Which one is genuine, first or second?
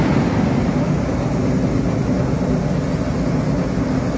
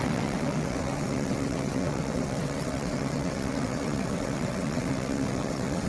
first